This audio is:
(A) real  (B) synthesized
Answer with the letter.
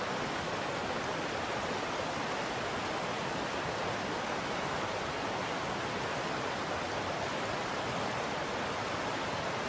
A